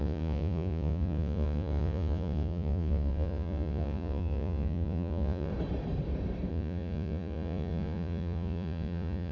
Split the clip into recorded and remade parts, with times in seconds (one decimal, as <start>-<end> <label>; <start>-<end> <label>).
0.0-5.5 remade; 5.5-6.5 recorded; 6.5-9.3 remade